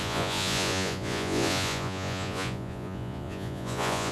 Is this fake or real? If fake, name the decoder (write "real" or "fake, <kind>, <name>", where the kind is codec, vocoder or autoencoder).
fake, vocoder, Vocos